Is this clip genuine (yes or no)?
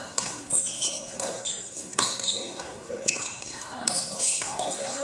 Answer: no